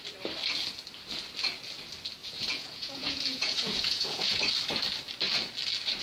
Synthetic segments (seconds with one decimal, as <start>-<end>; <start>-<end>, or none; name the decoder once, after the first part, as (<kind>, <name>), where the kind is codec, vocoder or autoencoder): 2.2-4.4 (vocoder, Vocos)